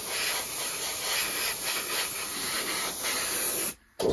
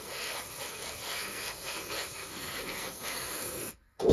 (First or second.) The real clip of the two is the first